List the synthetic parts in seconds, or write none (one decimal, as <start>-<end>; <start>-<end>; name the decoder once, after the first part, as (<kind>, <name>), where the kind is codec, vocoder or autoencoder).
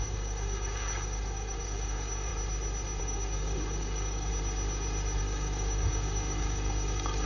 0.0-2.3 (codec, DAC); 3.0-4.3; 5.2-7.3